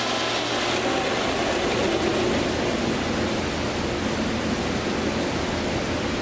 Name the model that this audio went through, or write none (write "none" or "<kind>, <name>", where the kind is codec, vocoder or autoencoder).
none